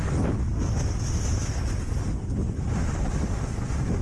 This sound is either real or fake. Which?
real